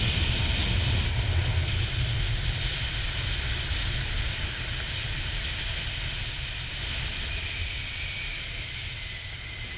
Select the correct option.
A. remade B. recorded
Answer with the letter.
B